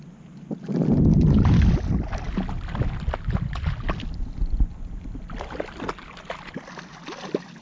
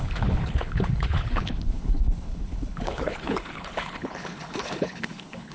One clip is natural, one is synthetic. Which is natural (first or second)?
first